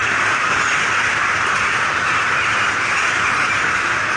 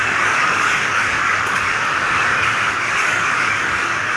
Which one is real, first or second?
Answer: first